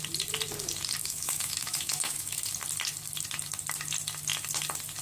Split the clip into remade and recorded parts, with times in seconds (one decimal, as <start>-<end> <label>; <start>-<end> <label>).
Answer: 0.0-1.0 recorded; 1.0-2.4 remade; 2.4-5.0 recorded